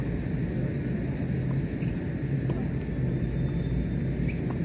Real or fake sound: real